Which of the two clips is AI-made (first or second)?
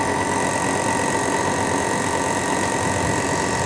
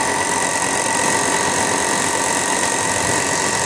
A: second